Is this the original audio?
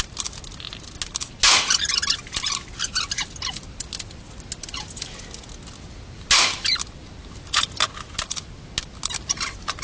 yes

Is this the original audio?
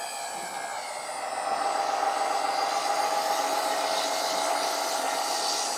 yes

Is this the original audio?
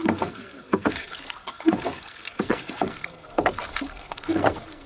no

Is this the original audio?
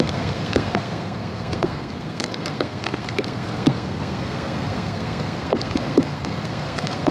no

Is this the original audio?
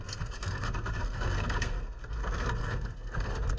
no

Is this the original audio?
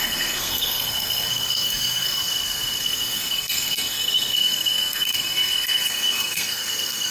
no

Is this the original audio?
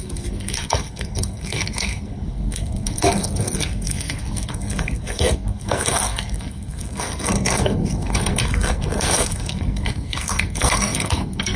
no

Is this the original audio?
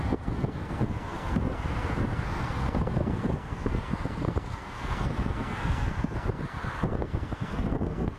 no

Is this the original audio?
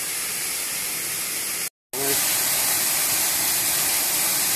yes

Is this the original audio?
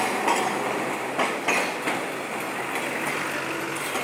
yes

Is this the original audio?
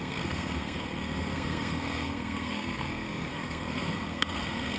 no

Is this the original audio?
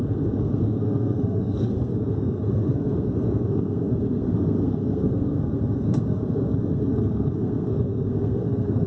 no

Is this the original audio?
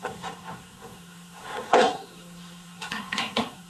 no